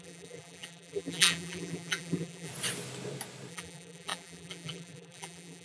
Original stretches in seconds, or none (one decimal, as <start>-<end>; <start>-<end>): 2.5-3.5